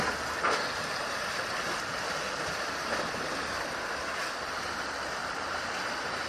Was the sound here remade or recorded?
recorded